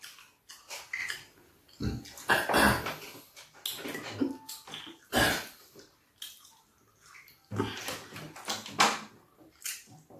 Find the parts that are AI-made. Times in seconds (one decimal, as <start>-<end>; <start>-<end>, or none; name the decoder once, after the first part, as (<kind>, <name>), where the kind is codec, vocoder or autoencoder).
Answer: none